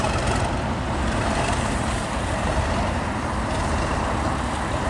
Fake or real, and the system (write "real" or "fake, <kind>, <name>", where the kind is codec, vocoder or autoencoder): fake, vocoder, BigVGAN v2